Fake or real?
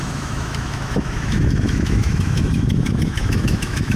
fake